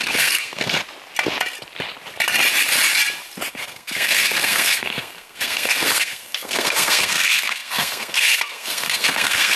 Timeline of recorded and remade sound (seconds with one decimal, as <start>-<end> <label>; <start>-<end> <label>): 0.0-0.8 remade; 0.8-3.5 recorded; 3.5-9.6 remade